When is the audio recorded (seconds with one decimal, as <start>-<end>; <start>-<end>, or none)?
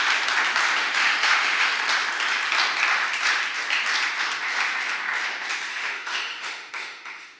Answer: 0.0-0.8; 1.7-5.7